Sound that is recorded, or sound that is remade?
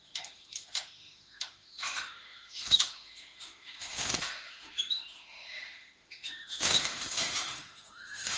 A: remade